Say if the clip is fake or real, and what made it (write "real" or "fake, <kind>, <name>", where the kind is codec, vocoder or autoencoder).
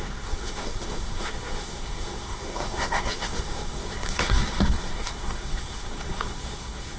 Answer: fake, codec, SNAC